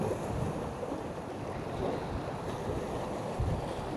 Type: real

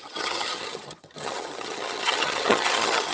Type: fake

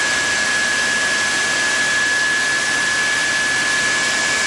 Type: real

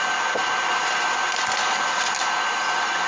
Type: real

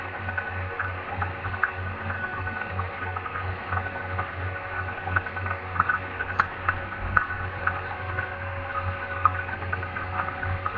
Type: fake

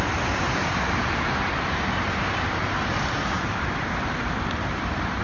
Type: fake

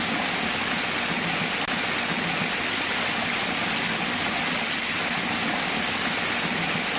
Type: real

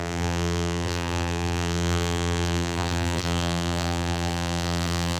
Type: fake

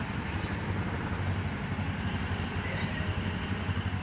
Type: real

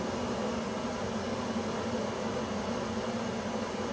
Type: real